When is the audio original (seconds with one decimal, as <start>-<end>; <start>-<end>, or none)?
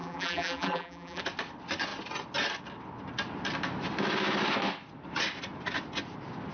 1.2-6.5